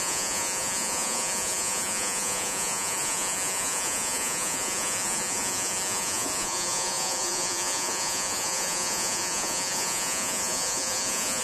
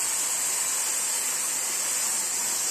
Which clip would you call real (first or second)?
second